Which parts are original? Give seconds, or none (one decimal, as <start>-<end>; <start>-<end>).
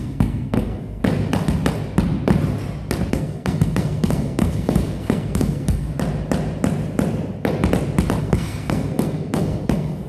1.0-3.1; 5.9-8.2